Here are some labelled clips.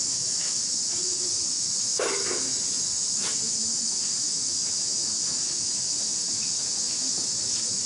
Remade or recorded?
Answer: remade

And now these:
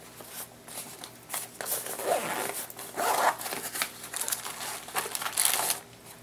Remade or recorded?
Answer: recorded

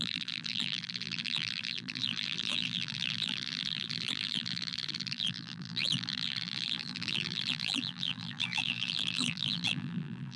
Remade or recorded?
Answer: remade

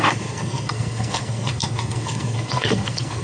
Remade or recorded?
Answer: remade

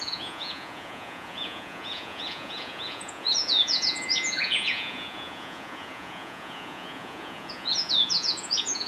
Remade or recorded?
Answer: remade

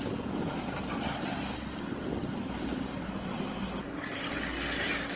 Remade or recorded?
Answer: recorded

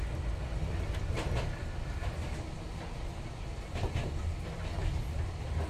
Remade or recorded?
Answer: recorded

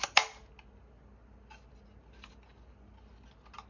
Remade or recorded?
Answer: recorded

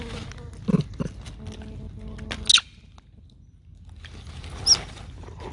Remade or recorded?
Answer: recorded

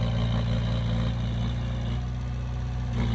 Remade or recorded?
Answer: recorded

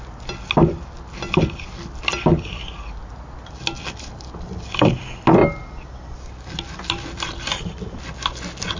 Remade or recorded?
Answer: recorded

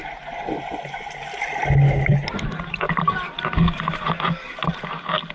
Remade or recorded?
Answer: recorded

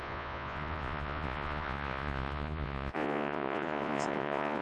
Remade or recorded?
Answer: remade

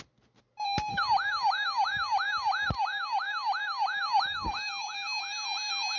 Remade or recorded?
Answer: recorded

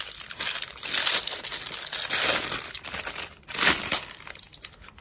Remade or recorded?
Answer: recorded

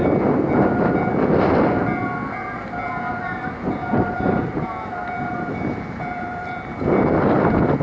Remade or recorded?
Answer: recorded